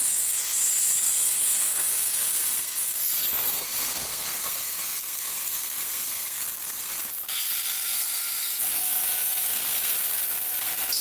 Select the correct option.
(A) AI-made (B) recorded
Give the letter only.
A